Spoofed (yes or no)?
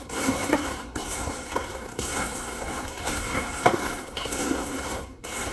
yes